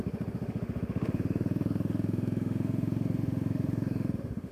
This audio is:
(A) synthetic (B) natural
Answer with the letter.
A